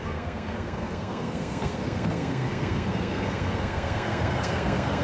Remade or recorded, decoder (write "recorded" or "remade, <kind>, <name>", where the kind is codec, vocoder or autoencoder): remade, codec, SNAC